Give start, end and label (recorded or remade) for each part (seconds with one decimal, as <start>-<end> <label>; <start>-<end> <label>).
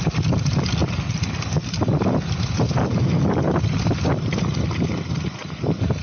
0.0-6.0 recorded